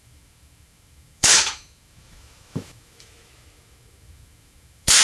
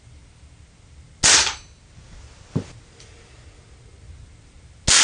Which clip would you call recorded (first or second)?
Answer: second